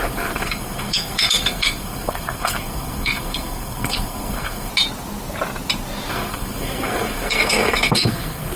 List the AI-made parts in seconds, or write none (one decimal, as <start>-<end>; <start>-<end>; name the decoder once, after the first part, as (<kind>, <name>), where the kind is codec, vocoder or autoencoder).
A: 0.0-4.7 (codec, SNAC); 6.1-8.6